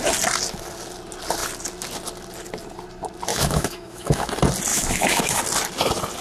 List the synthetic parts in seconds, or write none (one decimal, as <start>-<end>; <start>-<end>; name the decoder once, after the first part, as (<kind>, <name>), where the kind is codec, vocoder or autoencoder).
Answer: 3.3-4.3 (autoencoder, DAC-VAE); 4.7-5.4

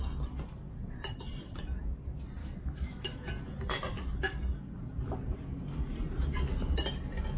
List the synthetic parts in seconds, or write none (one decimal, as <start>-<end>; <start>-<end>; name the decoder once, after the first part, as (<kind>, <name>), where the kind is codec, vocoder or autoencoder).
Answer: 2.4-3.3 (autoencoder, DAC-VAE)

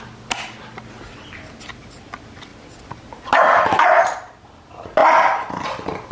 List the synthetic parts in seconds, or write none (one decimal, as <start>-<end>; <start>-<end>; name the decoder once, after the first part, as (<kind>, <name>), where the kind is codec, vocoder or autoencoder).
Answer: none

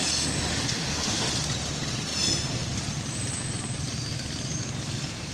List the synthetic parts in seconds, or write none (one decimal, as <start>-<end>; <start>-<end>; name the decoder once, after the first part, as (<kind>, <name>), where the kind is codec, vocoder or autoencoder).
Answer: 0.5-1.3 (autoencoder, DAC-VAE)

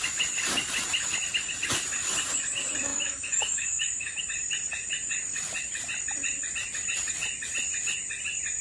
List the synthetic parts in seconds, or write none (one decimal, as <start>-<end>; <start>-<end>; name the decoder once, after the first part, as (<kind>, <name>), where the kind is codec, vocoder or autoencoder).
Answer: 2.9-4.2 (autoencoder, DAC-VAE)

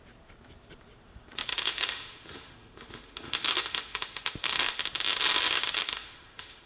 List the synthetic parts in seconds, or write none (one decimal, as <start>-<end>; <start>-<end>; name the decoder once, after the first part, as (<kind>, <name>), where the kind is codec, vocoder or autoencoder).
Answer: 1.5-4.8 (autoencoder, DAC-VAE); 5.8-6.7

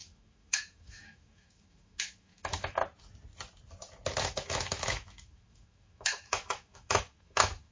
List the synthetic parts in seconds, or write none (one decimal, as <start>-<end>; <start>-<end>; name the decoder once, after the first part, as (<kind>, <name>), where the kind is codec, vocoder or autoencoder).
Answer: 0.0-2.8 (autoencoder, DAC-VAE); 4.2-7.7

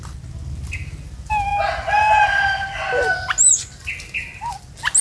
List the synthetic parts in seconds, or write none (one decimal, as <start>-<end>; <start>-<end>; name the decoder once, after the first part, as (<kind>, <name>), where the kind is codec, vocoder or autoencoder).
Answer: none